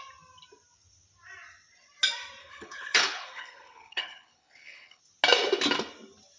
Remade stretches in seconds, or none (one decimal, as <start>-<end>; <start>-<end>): 2.4-5.0